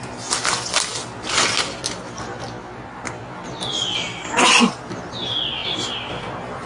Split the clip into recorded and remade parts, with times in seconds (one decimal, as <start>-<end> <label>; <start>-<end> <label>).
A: 0.0-6.7 recorded